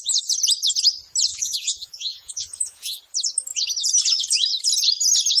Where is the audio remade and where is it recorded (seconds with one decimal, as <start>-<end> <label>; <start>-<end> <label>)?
0.0-1.3 recorded; 1.3-3.0 remade; 3.0-5.4 recorded